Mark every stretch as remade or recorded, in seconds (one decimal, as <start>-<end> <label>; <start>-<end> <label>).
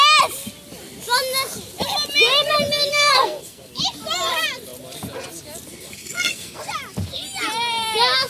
0.0-2.9 recorded; 2.9-3.8 remade; 3.8-5.7 recorded; 5.7-6.6 remade; 6.6-8.3 recorded